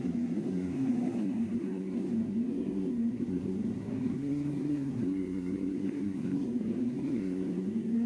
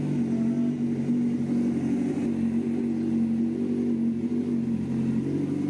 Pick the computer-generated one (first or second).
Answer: first